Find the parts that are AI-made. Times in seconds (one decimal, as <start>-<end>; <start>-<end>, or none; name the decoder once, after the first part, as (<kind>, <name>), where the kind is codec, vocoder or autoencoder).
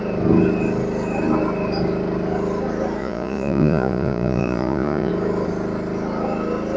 3.0-5.1 (vocoder, Vocos)